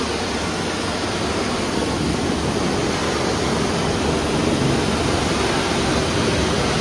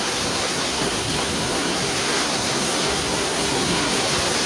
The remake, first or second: second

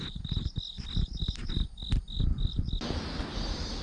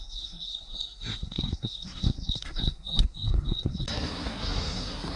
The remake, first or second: second